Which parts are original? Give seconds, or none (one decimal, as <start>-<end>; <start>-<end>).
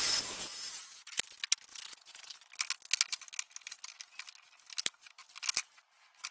0.0-0.5; 1.2-1.7; 2.3-6.3